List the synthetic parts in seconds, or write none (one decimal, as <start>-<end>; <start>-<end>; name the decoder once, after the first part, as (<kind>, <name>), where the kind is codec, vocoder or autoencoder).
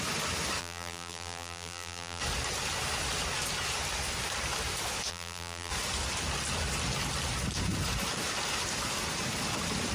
0.6-2.2 (vocoder, BigVGAN v2); 5.1-5.7